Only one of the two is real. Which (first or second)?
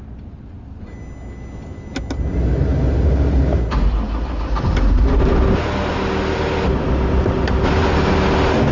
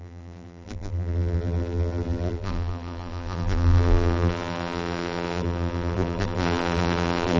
first